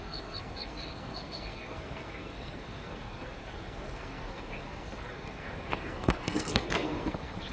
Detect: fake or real fake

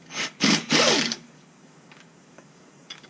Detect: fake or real fake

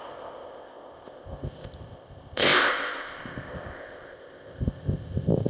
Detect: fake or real fake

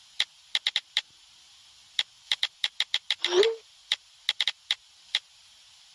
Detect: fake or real real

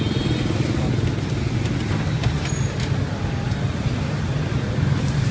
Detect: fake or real real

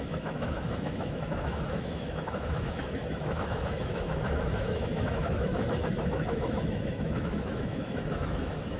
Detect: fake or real fake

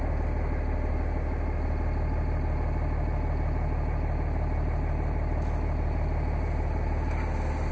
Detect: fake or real real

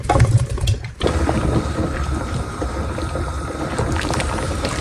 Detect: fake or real fake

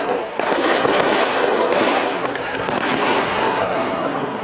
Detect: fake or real fake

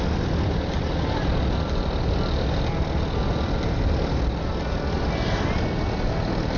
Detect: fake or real real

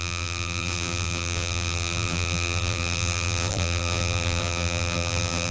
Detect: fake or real fake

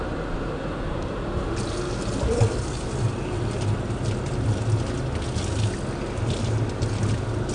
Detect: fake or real real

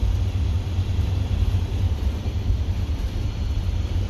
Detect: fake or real fake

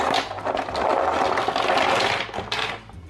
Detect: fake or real real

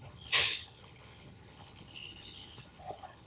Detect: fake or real fake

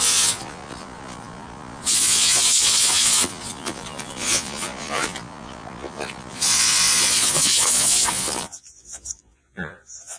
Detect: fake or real fake